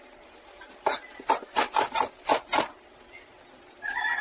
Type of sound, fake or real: real